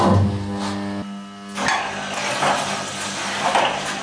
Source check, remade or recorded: recorded